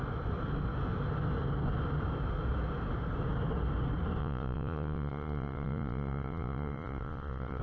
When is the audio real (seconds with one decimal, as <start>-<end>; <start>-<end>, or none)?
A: 0.0-4.2